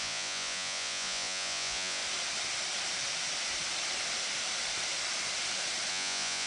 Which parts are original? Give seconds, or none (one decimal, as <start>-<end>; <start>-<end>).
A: 2.0-5.9